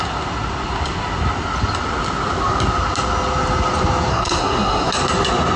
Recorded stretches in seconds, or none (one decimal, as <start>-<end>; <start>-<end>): 0.0-4.1; 4.9-5.6